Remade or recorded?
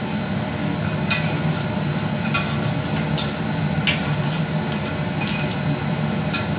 recorded